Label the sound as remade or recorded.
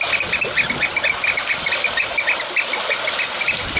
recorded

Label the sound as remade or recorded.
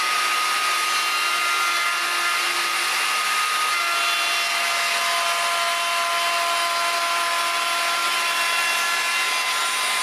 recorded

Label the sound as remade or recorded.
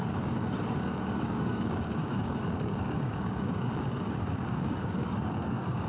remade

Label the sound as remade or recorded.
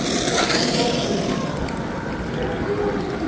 recorded